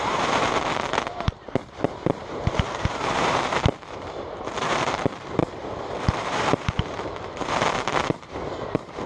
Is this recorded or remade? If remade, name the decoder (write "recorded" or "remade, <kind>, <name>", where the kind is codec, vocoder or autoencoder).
remade, vocoder, BigVGAN v2